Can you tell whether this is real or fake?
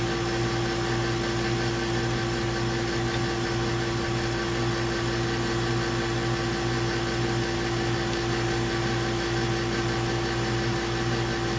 real